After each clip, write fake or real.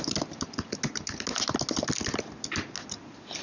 real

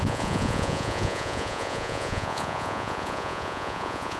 fake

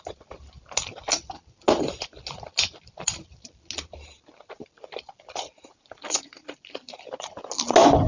real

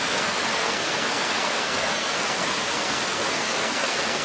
fake